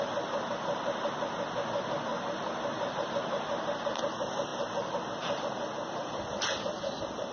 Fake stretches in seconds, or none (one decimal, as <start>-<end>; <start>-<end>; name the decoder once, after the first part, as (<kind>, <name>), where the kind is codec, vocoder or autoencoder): 2.1-3.1 (vocoder, BigVGAN v2)